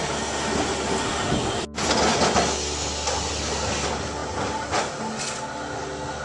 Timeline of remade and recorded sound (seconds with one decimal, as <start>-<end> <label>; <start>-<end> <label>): 0.0-6.2 recorded